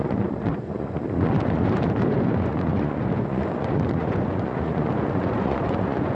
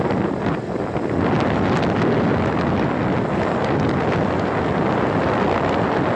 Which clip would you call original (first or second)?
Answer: second